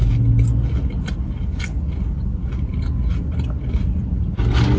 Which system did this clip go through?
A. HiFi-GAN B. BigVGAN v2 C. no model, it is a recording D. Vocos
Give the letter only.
C